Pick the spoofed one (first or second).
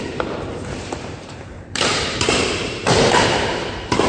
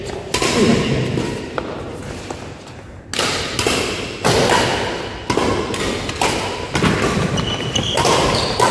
first